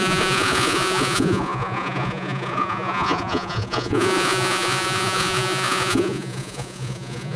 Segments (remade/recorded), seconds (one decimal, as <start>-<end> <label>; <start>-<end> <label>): 0.0-7.4 remade